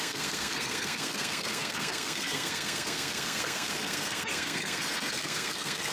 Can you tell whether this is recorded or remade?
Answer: remade